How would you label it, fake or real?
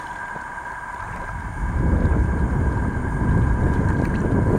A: real